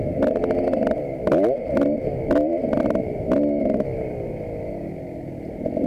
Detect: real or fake real